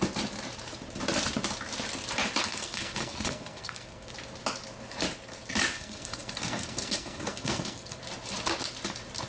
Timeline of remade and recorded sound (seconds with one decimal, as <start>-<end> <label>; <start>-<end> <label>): 0.0-2.4 recorded; 2.4-4.1 remade; 4.1-5.7 recorded; 5.7-8.0 remade; 8.0-9.3 recorded